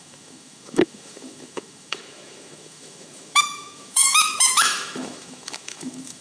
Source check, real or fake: fake